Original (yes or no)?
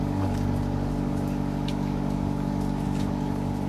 no